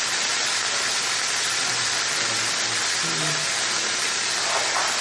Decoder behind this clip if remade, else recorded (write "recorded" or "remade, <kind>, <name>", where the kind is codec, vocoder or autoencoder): recorded